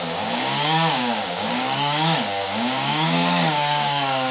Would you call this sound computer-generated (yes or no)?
yes